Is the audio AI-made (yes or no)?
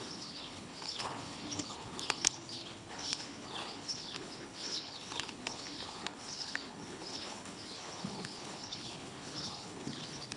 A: yes